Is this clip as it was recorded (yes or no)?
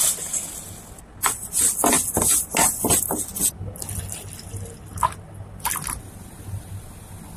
yes